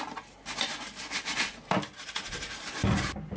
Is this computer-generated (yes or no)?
no